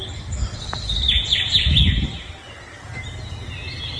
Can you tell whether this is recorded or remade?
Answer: recorded